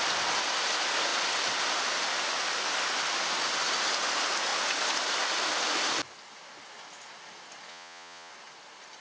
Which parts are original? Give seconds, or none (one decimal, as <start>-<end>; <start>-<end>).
0.0-7.7; 8.3-9.0